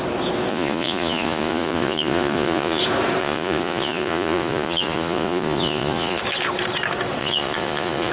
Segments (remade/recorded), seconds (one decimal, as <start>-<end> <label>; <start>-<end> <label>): 0.0-0.5 recorded; 0.5-2.8 remade; 2.8-3.2 recorded; 3.2-6.2 remade; 6.2-7.2 recorded; 7.2-8.1 remade